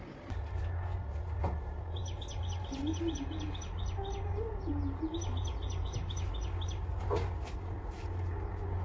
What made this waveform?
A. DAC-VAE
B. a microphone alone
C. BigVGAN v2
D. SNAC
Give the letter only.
B